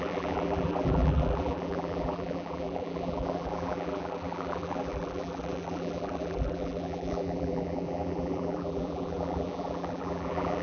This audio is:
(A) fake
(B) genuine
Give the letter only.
A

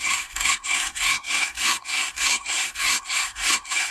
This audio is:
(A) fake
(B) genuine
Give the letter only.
A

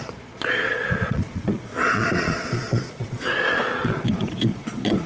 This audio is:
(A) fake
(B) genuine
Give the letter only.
A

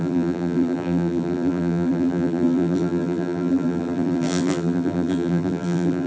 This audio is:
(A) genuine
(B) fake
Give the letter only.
B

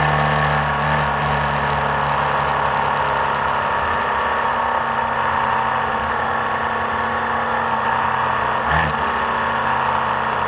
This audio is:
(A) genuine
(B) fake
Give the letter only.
A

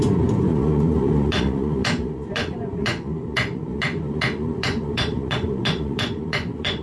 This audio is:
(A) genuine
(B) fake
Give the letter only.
B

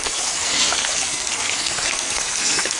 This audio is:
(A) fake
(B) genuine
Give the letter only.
A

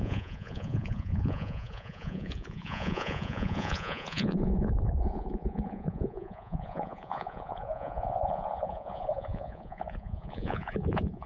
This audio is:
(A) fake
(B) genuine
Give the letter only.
A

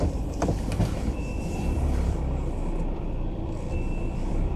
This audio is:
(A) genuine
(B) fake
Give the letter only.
B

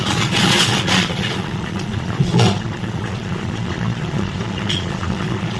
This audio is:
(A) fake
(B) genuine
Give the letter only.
A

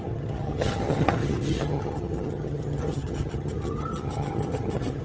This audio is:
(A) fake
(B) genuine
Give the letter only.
A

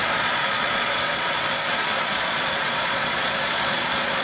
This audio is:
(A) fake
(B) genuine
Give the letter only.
A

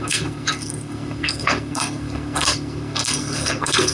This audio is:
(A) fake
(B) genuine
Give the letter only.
A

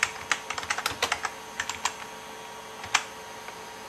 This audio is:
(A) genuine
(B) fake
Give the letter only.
A